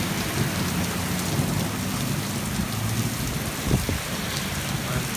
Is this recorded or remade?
recorded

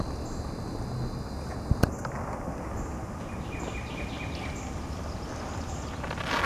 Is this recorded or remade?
recorded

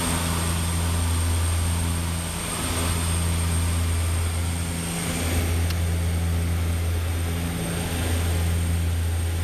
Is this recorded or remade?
recorded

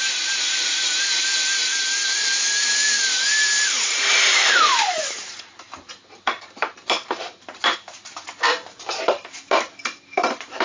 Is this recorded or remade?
remade